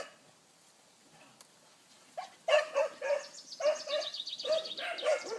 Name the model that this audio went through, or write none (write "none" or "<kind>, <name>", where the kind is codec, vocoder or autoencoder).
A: none